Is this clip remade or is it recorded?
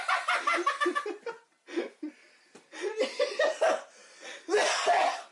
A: recorded